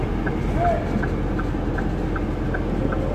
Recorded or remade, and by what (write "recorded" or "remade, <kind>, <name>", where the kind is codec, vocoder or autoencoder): recorded